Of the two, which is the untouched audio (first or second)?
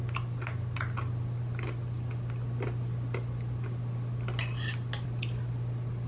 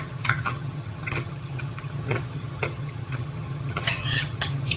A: first